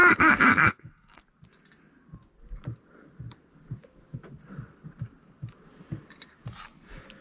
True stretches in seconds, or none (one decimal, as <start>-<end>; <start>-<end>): 1.2-7.2